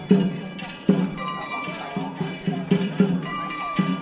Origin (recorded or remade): remade